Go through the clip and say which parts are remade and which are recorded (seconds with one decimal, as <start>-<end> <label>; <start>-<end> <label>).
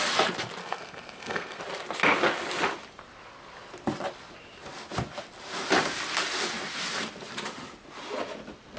0.0-0.6 recorded; 0.6-1.6 remade; 1.6-8.8 recorded